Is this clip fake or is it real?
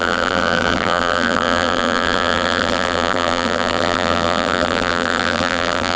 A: fake